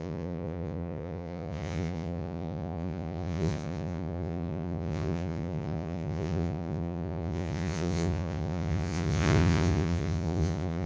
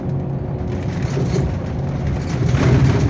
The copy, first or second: first